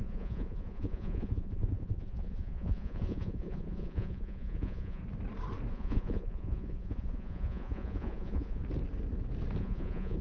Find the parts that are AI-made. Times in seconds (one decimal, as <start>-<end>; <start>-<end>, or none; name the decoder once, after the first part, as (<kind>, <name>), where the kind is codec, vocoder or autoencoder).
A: 0.0-5.0 (vocoder, Vocos); 5.7-8.6; 9.6-10.2